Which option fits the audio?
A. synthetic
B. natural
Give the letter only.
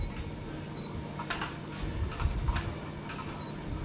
B